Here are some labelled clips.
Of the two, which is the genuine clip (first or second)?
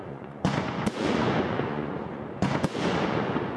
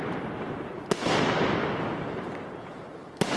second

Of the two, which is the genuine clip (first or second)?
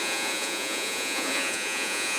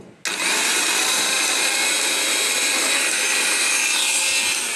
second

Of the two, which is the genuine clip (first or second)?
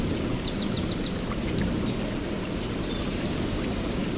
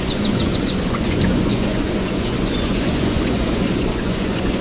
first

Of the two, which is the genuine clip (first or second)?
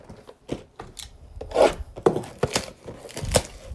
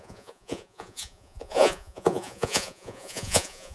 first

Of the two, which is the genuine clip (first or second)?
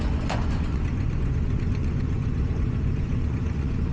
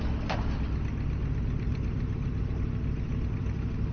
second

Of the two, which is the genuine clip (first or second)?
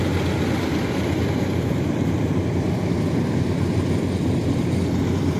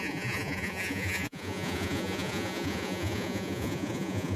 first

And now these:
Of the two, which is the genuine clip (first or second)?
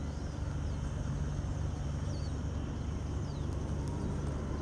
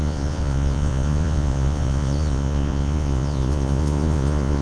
first